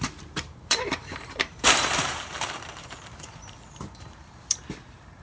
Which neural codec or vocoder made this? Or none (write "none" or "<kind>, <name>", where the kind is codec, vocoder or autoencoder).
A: vocoder, BigVGAN v2